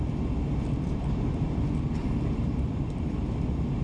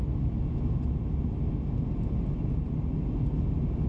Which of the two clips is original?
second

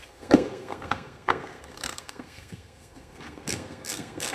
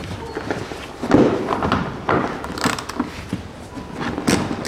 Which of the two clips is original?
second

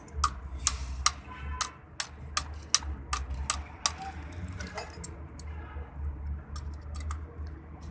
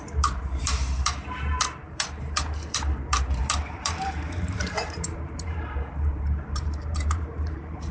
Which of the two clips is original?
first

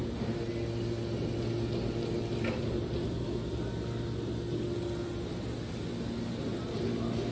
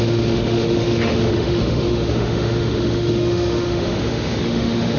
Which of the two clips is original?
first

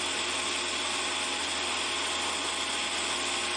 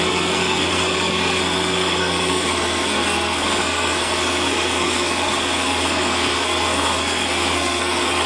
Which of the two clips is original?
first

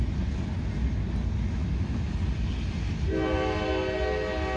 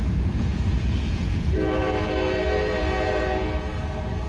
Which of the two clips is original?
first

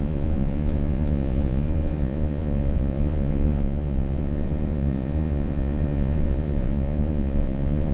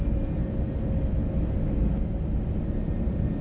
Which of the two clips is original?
second